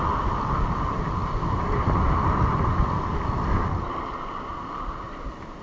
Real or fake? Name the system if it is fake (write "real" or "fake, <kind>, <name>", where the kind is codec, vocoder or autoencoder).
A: real